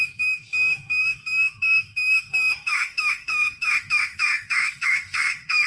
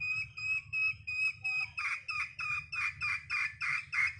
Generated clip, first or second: first